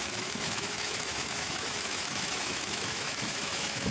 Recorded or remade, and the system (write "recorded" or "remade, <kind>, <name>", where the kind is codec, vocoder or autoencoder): remade, autoencoder, DAC-VAE